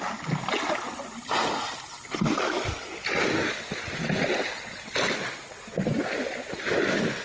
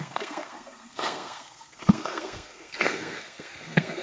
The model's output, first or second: second